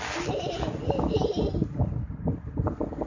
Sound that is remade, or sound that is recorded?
recorded